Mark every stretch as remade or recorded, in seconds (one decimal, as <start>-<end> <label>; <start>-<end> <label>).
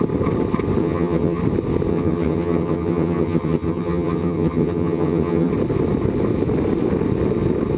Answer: 0.0-0.8 recorded; 0.8-1.4 remade; 1.4-1.9 recorded; 1.9-5.5 remade; 5.5-7.8 recorded